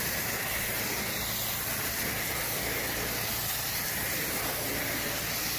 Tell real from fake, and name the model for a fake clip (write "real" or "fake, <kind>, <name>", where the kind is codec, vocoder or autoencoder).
real